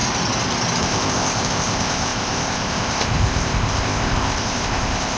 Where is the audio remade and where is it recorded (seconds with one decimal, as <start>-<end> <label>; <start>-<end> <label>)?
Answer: 0.0-0.8 recorded; 0.8-5.2 remade